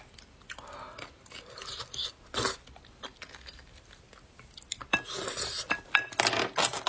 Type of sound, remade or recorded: recorded